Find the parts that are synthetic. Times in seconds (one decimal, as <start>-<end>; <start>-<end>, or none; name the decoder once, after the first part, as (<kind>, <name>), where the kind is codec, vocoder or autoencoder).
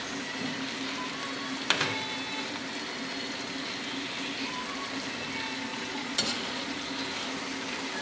5.7-6.9 (vocoder, Vocos)